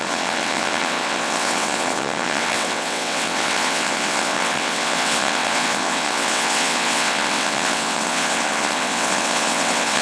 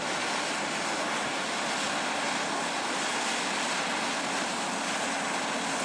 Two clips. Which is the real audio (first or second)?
second